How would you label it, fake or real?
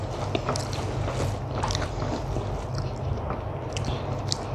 real